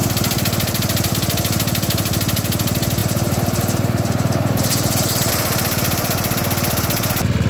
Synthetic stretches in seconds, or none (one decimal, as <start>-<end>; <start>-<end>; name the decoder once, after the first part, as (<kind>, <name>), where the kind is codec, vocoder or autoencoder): 3.0-5.3 (vocoder, BigVGAN v2)